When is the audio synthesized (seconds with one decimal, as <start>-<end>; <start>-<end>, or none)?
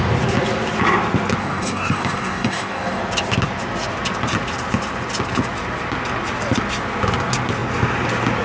1.4-3.0